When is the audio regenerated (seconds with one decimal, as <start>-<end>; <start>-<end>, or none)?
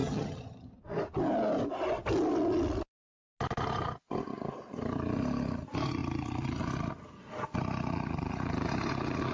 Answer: 0.0-0.7